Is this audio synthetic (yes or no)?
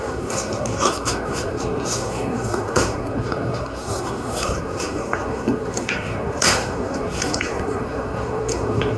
yes